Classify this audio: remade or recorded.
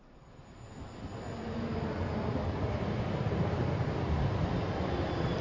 recorded